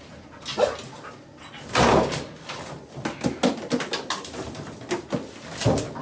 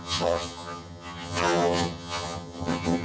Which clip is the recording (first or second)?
first